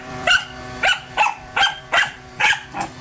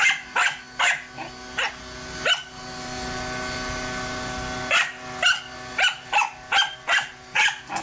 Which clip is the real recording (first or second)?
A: second